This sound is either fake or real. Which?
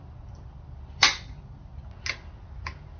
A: real